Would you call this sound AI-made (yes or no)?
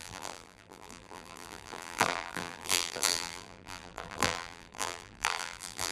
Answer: yes